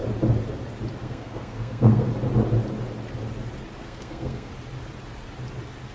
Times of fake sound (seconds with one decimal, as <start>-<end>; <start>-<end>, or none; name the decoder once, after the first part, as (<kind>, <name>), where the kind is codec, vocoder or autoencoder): 1.0-2.1 (codec, SNAC); 3.8-4.5